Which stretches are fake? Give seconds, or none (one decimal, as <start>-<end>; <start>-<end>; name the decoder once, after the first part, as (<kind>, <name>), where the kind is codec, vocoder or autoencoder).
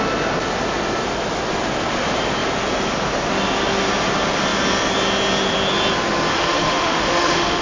6.3-7.6 (autoencoder, DAC-VAE)